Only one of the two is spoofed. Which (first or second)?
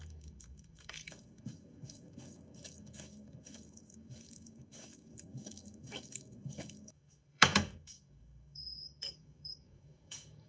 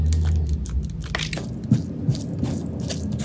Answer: first